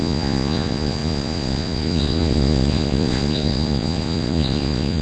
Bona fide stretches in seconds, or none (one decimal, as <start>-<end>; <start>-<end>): none